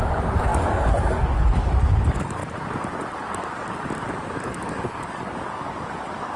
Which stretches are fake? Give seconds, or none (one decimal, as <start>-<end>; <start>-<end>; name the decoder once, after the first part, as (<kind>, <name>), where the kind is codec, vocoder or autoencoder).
0.0-2.4 (codec, DAC); 3.2-6.4